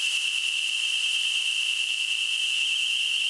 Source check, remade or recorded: recorded